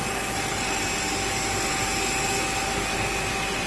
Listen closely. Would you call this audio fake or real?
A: real